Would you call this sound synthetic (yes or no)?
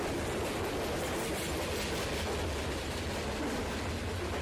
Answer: no